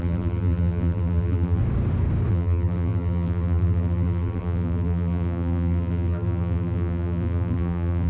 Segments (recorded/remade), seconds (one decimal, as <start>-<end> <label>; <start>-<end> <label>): 0.0-1.6 remade; 1.6-2.3 recorded; 2.3-8.1 remade